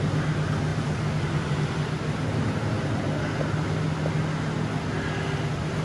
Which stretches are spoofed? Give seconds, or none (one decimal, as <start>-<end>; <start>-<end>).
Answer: none